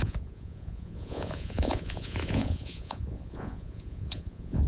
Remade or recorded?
remade